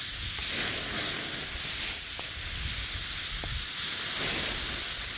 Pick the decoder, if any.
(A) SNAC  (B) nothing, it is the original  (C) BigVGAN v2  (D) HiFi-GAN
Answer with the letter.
B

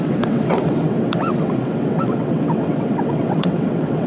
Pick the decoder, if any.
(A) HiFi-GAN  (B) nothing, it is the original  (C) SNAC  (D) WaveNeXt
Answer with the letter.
D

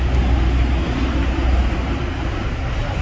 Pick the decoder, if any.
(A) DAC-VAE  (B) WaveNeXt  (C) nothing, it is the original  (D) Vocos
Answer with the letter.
C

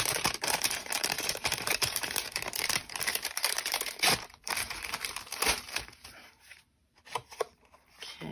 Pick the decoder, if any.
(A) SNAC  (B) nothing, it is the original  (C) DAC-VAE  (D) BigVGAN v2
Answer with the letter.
D